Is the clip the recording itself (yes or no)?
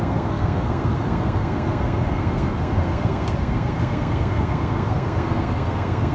no